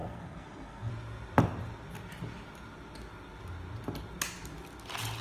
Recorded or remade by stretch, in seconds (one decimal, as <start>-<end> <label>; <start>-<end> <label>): 0.0-0.9 remade; 0.9-5.2 recorded